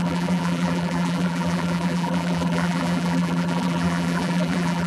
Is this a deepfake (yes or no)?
yes